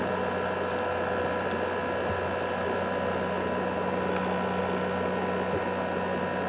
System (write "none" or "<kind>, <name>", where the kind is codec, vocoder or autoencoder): none